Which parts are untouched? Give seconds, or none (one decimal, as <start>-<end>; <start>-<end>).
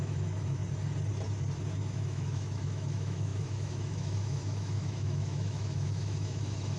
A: 0.6-1.8